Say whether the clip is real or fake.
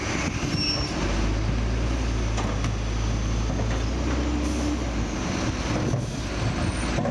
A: real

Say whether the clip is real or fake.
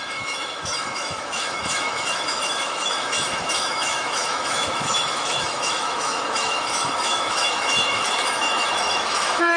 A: fake